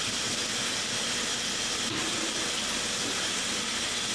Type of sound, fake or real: real